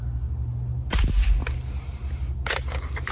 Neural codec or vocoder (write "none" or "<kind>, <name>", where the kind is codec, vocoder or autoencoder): none